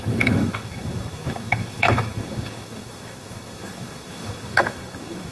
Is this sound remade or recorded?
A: remade